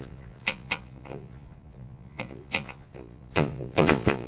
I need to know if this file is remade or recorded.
remade